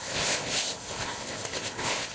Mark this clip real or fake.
fake